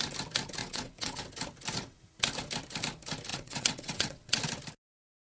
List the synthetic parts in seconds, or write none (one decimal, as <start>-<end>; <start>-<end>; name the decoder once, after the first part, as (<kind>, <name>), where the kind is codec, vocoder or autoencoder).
0.6-1.2 (vocoder, WaveNeXt); 3.3-4.4